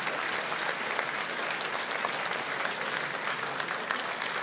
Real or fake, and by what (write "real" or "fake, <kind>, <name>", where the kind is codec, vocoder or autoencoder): real